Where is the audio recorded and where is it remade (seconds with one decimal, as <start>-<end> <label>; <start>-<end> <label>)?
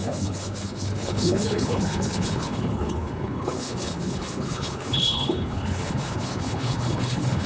0.0-7.5 remade